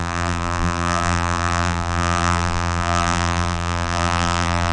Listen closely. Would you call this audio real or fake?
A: fake